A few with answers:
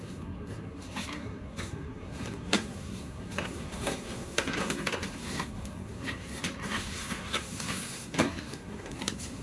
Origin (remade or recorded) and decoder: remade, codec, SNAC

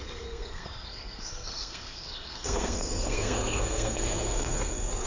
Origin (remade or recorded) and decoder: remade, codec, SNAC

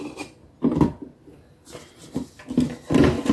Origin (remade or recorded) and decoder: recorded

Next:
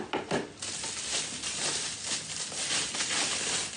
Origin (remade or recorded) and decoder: recorded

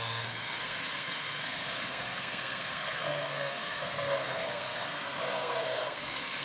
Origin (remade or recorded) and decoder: remade, codec, SNAC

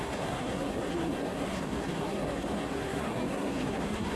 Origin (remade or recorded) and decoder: remade, codec, SNAC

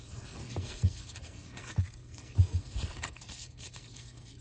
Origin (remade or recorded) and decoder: remade, codec, SNAC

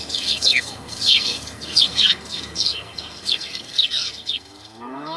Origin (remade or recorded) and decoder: remade, codec, SNAC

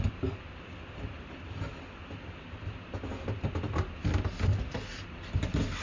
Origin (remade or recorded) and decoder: recorded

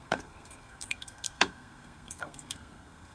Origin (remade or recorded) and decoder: remade, codec, SNAC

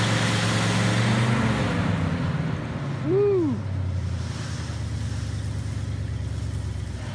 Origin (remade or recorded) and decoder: recorded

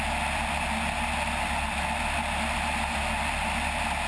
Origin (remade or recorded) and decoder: recorded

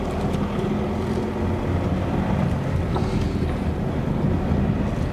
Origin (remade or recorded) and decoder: recorded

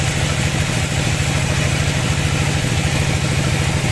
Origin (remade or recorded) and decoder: recorded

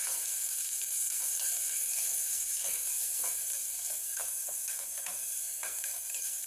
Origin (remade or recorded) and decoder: remade, codec, SNAC